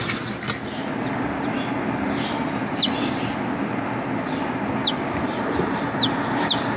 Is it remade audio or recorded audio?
recorded